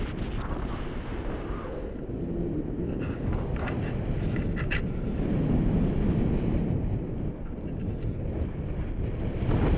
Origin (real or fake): real